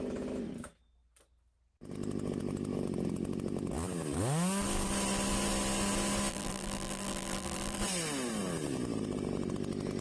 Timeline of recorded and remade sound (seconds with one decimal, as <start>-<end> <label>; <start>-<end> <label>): 0.0-6.3 recorded; 6.3-7.8 remade; 7.8-10.0 recorded